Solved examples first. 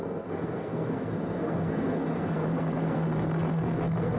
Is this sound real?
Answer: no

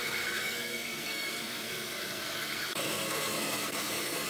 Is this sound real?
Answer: no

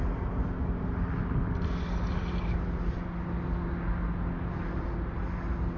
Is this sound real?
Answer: yes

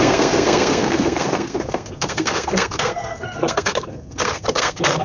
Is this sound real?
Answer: no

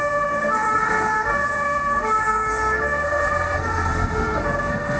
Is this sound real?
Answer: no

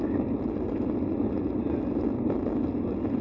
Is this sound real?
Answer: yes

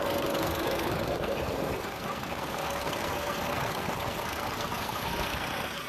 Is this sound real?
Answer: no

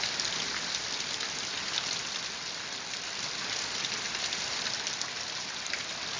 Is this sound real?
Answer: yes